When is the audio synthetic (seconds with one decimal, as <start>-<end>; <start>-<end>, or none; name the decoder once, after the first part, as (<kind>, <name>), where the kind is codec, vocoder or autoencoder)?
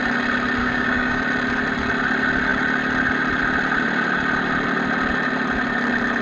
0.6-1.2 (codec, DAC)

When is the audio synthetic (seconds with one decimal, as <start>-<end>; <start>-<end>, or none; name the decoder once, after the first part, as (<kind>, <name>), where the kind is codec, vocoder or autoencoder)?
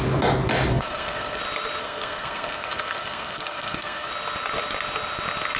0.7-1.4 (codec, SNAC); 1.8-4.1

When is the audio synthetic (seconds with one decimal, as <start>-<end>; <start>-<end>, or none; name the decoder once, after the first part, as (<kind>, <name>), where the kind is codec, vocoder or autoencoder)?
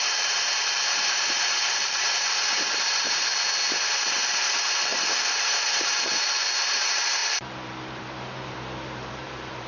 0.0-3.3 (vocoder, BigVGAN v2); 4.4-9.7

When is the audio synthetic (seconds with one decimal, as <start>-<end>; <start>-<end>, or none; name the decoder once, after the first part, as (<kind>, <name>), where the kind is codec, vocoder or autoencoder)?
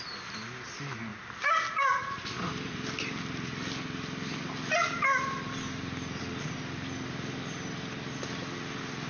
none